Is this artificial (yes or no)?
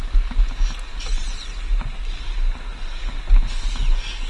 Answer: no